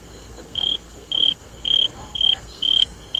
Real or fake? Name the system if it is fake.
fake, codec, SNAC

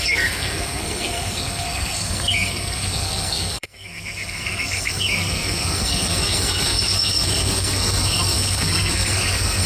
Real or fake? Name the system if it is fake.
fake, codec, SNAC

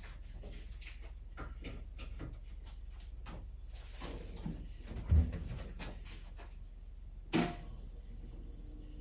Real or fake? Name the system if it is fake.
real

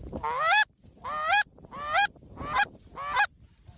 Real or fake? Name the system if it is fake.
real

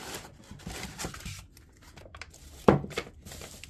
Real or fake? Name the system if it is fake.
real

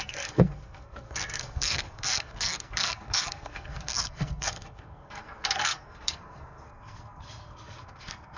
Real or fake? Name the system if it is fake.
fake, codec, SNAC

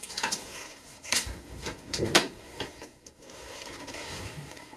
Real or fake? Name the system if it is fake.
fake, codec, SNAC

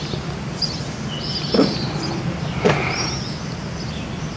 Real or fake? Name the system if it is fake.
real